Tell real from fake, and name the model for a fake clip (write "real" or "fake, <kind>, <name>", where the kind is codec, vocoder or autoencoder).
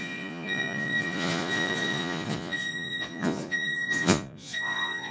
fake, vocoder, Vocos